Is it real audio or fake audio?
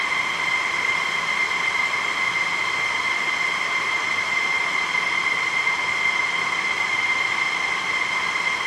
real